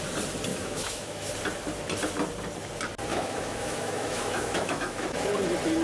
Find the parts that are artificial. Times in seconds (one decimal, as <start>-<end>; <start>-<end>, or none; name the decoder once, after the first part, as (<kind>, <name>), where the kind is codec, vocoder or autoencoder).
0.5-1.3 (autoencoder, DAC-VAE); 3.1-5.3